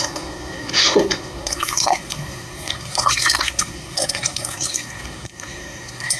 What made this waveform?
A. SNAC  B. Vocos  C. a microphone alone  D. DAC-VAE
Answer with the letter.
A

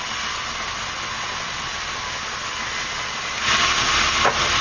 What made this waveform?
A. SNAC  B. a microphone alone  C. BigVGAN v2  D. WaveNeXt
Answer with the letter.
B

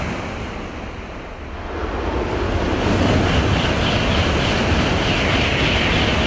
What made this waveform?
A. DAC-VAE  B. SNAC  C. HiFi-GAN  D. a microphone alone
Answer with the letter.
D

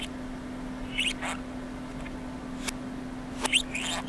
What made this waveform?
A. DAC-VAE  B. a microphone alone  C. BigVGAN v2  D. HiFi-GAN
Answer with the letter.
B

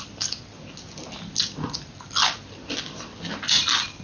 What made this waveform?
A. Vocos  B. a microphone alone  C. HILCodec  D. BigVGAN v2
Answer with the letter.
B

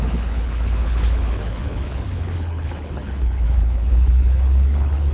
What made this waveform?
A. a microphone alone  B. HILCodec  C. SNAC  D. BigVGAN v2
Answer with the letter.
B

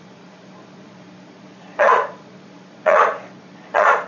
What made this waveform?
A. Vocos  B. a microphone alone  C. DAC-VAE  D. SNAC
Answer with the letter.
A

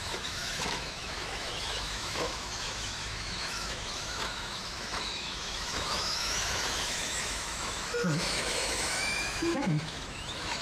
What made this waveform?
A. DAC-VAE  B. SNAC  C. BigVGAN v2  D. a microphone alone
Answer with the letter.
A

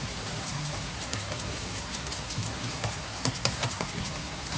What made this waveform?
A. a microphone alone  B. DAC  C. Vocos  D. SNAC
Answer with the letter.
D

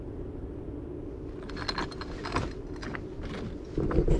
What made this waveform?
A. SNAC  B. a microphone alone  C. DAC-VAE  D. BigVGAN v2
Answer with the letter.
B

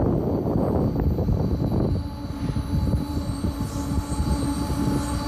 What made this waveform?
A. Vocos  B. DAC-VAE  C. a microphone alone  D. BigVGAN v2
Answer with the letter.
C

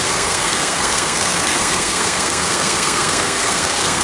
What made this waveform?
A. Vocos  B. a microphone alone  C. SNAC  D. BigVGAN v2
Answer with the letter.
C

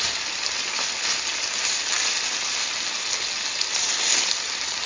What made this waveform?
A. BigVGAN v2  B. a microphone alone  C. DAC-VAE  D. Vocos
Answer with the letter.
B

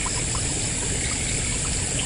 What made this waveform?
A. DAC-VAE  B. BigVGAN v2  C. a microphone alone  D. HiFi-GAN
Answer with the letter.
C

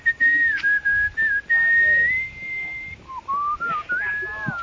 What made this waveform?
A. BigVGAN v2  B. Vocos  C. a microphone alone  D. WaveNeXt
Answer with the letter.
C